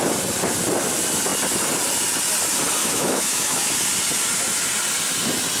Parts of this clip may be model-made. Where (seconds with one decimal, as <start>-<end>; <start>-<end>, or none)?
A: 2.8-3.7